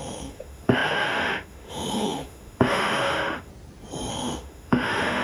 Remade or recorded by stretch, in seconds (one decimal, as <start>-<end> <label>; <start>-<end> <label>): 0.0-3.5 remade; 3.5-4.1 recorded; 4.1-5.2 remade